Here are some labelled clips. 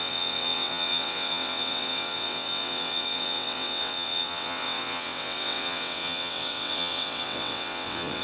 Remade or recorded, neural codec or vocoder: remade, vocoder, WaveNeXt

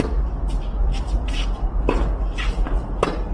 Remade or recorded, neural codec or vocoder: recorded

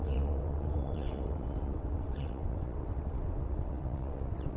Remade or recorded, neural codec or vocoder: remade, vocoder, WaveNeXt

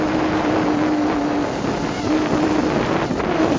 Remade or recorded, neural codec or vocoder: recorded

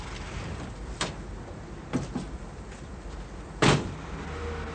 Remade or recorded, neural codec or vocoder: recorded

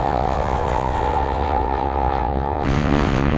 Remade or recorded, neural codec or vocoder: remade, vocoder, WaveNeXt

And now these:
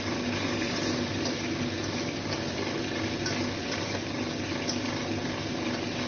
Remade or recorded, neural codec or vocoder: recorded